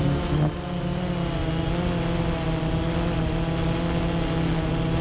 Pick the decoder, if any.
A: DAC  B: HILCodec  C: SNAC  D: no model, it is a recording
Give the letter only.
D